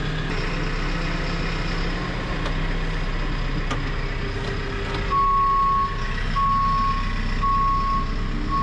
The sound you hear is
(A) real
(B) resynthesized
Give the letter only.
A